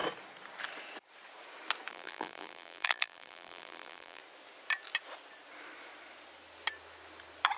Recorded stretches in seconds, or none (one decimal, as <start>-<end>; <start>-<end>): 0.0-1.9; 4.2-7.6